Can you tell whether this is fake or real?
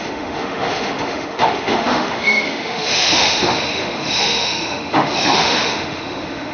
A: fake